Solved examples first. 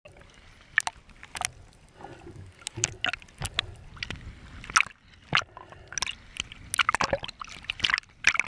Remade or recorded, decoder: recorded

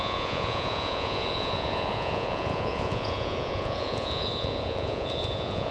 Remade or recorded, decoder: remade, vocoder, Vocos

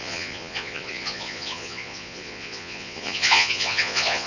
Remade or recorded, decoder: remade, vocoder, Vocos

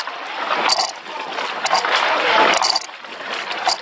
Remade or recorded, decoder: recorded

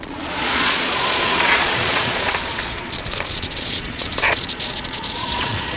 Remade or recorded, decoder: remade, vocoder, Vocos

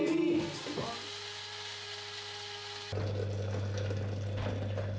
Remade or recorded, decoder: recorded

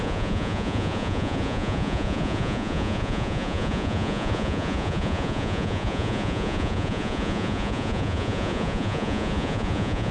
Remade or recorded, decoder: remade, vocoder, Vocos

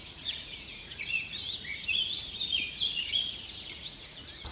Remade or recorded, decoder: remade, vocoder, Vocos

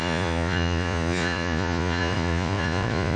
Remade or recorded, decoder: remade, vocoder, Vocos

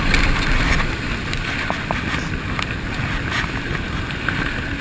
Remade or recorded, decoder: recorded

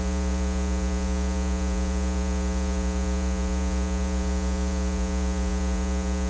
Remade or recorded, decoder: remade, vocoder, Vocos